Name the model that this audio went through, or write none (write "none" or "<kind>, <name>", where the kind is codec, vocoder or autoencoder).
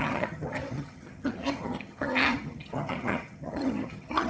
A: vocoder, HiFi-GAN